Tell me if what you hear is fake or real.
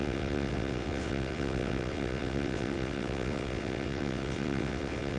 fake